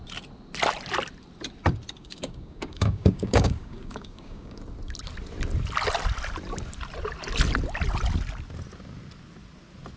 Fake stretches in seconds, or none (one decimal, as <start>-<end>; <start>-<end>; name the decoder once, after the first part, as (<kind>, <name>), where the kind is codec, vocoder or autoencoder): 2.0-4.6 (codec, DAC)